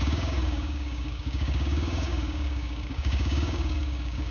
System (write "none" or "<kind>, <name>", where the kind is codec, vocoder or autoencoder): codec, DAC